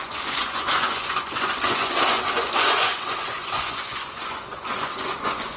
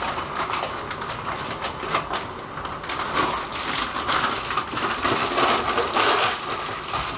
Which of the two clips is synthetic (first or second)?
first